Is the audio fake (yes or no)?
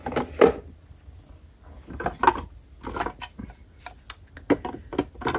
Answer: no